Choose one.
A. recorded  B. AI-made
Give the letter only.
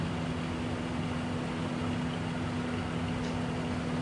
A